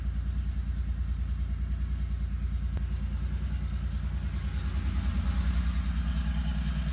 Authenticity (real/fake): real